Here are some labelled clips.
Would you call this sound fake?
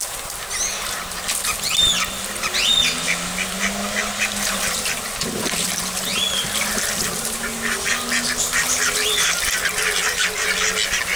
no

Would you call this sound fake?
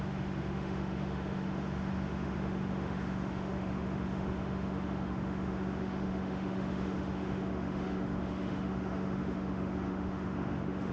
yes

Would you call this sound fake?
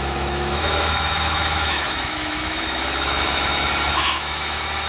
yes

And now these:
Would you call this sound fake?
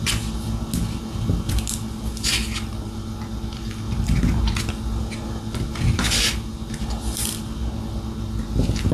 no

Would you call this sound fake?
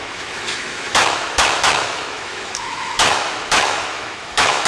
yes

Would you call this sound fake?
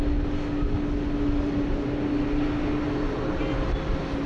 no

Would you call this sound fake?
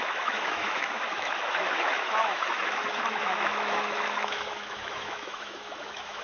yes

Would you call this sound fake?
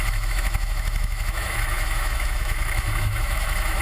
yes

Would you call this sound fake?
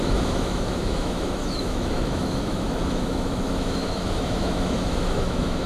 yes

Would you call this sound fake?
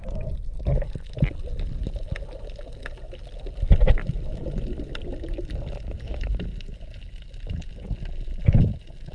no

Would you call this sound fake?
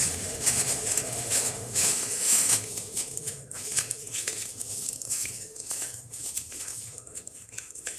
yes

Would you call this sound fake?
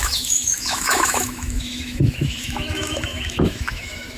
yes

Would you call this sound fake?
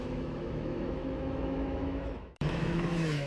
yes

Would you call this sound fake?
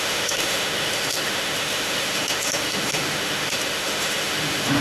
yes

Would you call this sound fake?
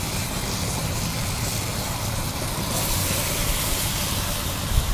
no